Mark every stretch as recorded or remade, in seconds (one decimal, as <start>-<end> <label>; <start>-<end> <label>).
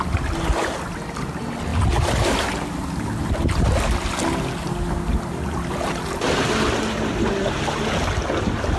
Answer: 0.0-8.8 recorded